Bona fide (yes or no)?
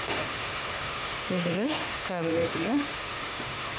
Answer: no